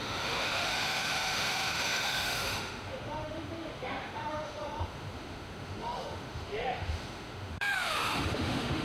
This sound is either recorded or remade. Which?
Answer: remade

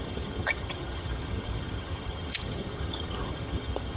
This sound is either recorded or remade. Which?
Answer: remade